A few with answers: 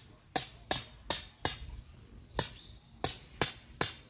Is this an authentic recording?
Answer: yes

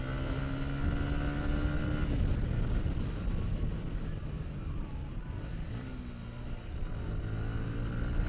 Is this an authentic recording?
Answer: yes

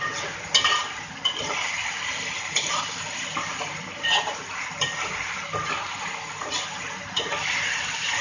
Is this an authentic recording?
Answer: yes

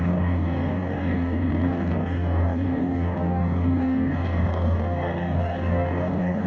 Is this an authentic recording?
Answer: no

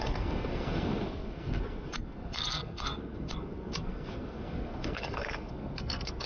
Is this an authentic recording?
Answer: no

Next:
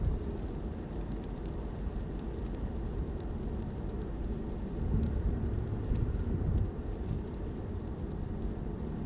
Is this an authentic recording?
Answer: no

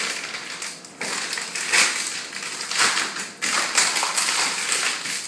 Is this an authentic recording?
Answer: yes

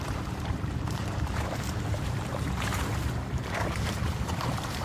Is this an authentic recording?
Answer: no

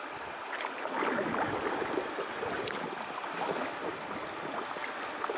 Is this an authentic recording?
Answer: yes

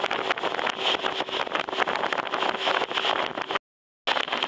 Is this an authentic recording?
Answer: yes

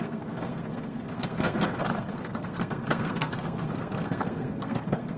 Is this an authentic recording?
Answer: no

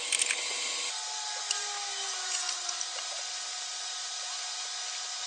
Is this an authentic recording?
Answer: yes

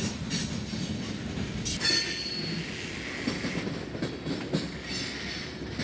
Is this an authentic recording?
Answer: yes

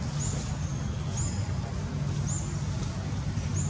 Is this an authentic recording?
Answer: yes